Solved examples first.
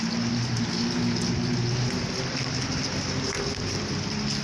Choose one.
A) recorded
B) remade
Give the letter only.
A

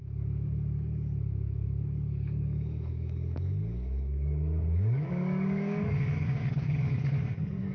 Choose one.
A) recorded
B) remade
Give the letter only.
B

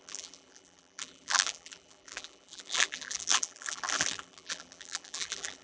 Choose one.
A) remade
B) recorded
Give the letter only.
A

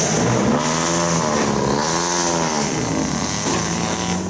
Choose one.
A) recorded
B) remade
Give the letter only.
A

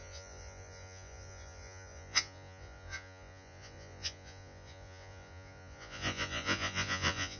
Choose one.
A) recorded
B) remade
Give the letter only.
B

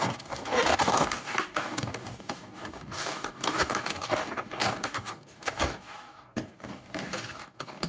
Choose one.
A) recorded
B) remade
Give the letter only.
B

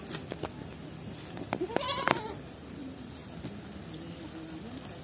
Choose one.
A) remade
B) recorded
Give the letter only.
B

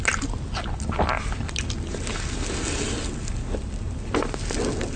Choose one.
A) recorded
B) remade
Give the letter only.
A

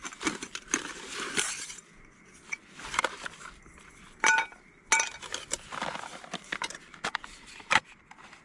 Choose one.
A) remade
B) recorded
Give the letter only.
B